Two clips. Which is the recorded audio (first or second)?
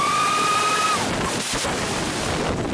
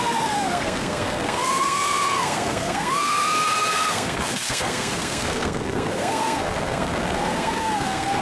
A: first